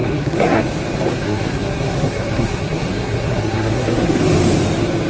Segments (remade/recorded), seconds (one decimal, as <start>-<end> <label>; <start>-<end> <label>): 0.0-0.6 remade; 0.6-1.1 recorded; 1.1-4.2 remade; 4.2-5.1 recorded